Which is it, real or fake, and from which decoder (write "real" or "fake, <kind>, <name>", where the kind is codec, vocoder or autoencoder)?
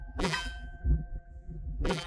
fake, vocoder, BigVGAN v2